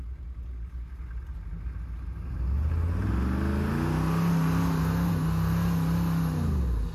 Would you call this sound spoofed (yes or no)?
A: no